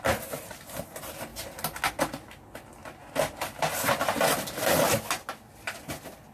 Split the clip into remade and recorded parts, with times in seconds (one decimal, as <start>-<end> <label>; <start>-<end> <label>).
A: 0.0-6.3 recorded